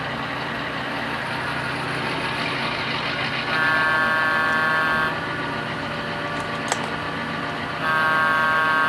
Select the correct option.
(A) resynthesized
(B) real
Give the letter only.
B